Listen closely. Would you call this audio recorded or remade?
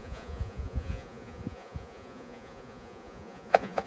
remade